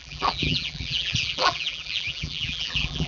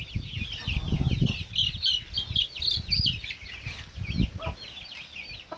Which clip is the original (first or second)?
second